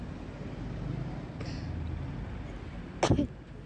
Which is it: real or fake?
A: real